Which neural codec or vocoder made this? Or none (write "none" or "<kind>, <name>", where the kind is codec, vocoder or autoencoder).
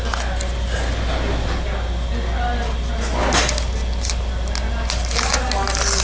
none